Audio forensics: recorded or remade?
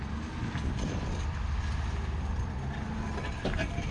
recorded